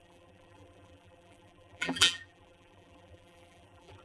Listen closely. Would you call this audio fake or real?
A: fake